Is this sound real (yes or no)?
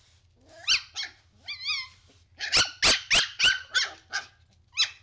yes